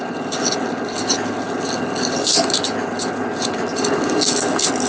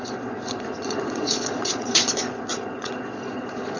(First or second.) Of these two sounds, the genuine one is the first